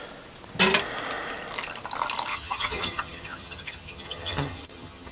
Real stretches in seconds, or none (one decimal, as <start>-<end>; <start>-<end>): 0.0-2.3